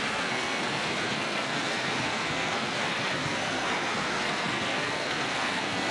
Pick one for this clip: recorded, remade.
remade